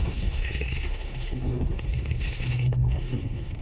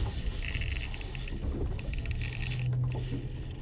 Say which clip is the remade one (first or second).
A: first